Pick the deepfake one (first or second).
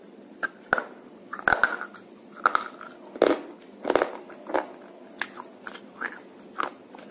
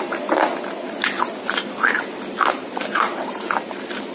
second